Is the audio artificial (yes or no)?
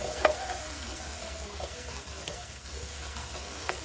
yes